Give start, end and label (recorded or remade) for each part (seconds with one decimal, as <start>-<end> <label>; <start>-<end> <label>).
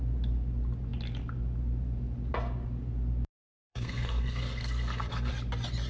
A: 0.0-3.6 recorded; 3.6-5.3 remade; 5.3-5.9 recorded